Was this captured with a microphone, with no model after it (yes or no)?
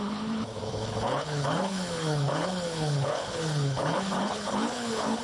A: no